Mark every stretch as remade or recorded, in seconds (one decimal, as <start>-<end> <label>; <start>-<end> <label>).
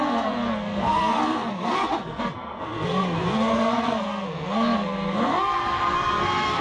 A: 0.0-6.6 remade